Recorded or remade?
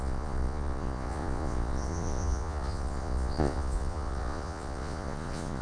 remade